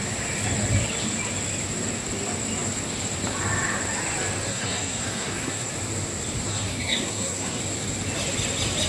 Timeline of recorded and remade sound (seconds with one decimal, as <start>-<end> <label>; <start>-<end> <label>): 0.0-4.5 recorded; 4.5-5.7 remade; 5.7-6.5 recorded; 6.5-7.6 remade; 7.6-8.9 recorded

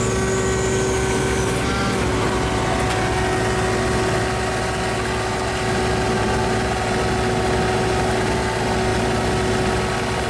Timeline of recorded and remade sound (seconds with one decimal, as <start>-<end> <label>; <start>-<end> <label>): 0.0-10.3 recorded

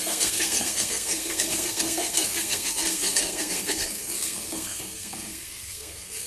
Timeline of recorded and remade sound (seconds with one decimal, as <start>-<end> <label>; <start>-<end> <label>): 0.0-6.3 remade

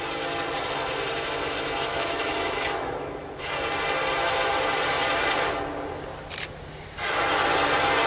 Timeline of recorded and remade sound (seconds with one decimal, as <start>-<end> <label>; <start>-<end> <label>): 0.0-1.9 recorded; 1.9-3.5 remade; 3.5-8.1 recorded

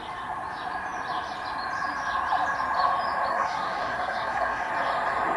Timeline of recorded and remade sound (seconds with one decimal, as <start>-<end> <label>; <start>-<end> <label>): 0.0-3.3 recorded; 3.3-4.7 remade; 4.7-5.4 recorded

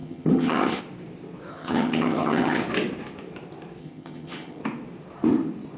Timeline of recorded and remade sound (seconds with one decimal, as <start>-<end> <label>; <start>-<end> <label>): 0.0-0.8 remade; 0.8-1.5 recorded; 1.5-2.6 remade; 2.6-3.8 recorded; 3.8-4.6 remade; 4.6-5.8 recorded

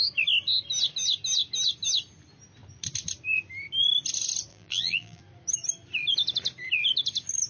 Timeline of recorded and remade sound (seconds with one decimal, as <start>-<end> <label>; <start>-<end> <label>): 0.0-4.5 recorded; 4.5-5.2 remade; 5.2-7.5 recorded